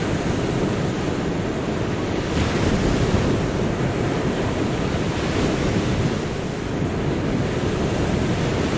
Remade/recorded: recorded